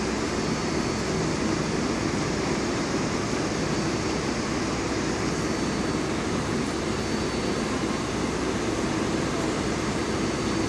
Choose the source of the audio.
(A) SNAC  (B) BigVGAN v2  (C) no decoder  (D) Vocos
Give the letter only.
C